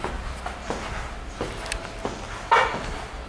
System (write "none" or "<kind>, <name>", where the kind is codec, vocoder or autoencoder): none